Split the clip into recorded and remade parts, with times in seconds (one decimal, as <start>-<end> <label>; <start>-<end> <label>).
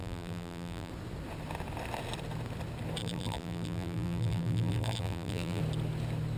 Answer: 0.0-0.9 remade; 0.9-3.0 recorded; 3.0-5.6 remade; 5.6-6.4 recorded